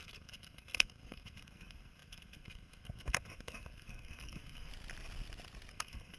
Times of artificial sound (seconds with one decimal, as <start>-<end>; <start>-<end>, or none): 0.0-4.7; 5.7-6.2